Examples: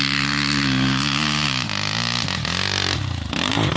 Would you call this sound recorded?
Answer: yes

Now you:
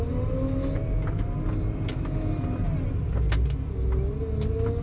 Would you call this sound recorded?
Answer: yes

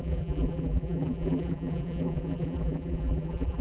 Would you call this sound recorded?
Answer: no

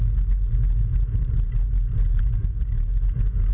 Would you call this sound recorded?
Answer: yes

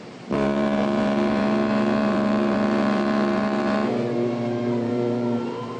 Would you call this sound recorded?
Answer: no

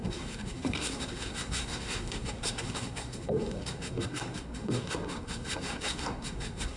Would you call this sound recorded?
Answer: no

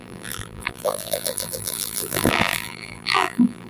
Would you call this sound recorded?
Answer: no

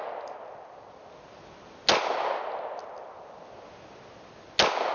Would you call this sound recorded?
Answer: yes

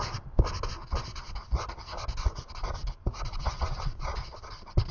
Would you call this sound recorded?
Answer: yes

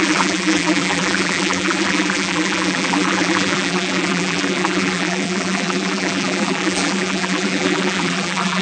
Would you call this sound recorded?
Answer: no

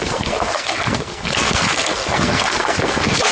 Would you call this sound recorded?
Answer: no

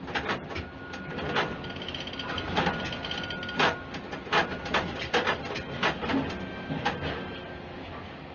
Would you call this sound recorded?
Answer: yes